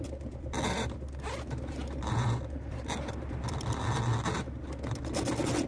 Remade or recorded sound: recorded